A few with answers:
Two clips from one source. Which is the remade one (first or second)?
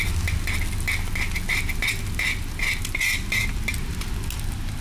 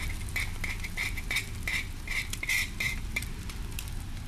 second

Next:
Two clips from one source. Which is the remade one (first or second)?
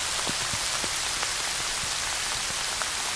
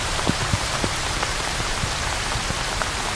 second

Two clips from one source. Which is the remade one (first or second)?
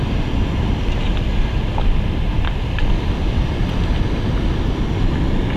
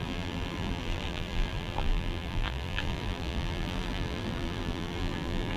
second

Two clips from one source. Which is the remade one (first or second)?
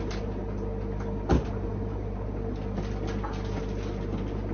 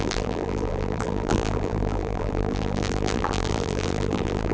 second